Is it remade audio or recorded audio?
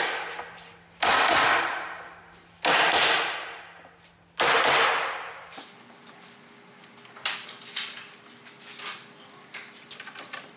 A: recorded